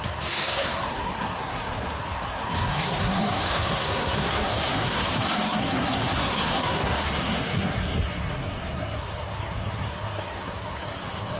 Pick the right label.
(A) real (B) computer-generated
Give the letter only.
B